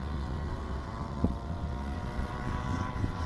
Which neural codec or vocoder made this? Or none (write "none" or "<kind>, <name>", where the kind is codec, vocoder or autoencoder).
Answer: vocoder, WaveNeXt